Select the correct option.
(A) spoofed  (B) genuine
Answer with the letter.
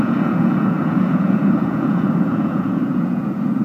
A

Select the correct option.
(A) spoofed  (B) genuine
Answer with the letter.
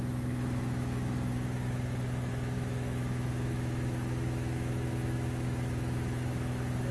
A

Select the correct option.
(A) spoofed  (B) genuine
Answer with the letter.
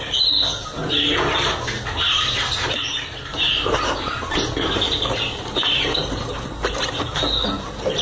B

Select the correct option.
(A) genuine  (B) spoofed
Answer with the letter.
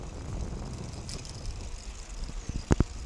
A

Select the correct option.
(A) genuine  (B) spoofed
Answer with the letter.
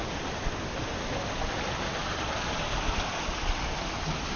A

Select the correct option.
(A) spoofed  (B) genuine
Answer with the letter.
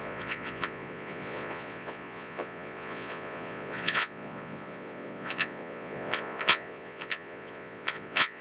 A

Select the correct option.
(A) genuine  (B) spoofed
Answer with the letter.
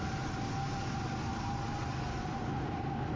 A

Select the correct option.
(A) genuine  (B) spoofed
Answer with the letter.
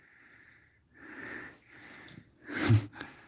A